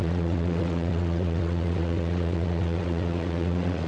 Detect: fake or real fake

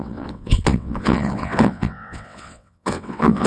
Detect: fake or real fake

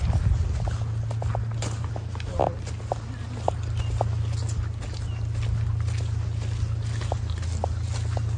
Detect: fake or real real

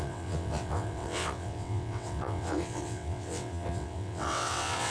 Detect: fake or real fake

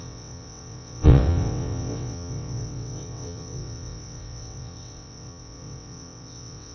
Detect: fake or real fake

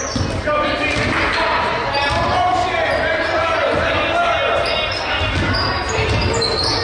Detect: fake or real real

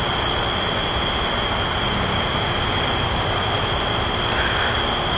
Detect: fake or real real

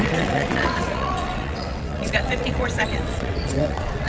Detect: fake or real fake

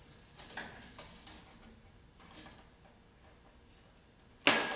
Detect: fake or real real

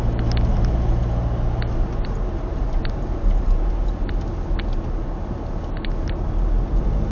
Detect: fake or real real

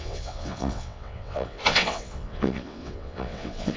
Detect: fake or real fake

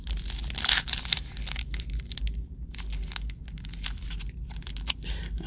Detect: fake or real real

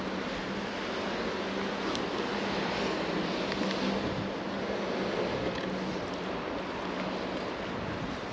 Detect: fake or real real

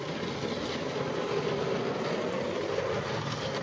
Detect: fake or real real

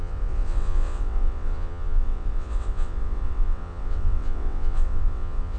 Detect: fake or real fake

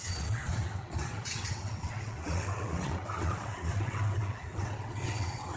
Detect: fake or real fake